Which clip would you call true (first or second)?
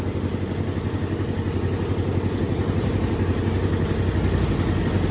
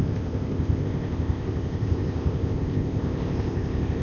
first